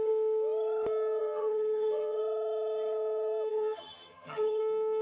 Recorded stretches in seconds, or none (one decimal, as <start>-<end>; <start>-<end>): 0.0-1.2; 2.2-3.5; 4.6-5.0